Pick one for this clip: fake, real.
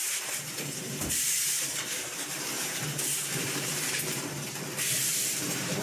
fake